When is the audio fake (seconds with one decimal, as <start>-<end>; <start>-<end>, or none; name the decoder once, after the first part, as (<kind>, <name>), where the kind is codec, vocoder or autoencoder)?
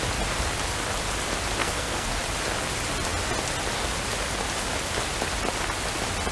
1.6-2.1 (codec, SNAC)